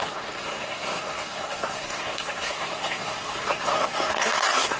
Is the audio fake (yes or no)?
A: yes